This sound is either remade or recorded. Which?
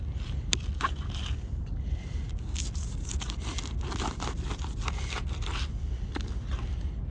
recorded